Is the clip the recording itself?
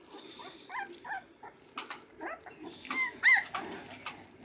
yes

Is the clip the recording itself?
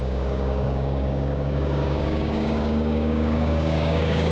no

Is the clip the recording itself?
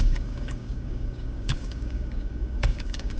no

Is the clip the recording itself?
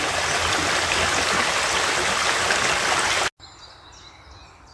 yes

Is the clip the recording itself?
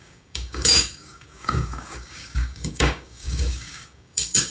no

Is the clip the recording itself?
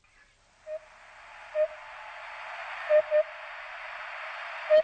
yes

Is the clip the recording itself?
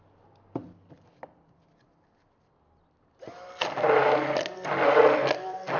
yes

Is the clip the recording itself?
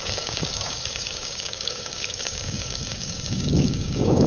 no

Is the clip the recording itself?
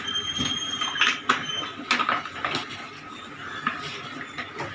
yes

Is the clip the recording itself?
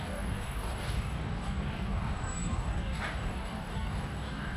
no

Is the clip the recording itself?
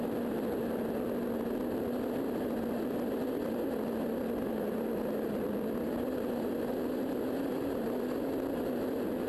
yes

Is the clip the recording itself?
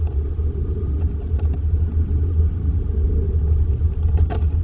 yes